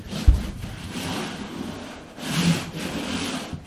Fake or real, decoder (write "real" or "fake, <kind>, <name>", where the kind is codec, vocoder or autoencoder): fake, vocoder, BigVGAN v2